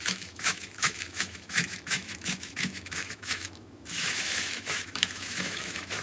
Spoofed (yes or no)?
yes